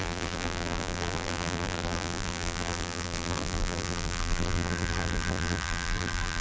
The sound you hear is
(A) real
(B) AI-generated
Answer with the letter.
B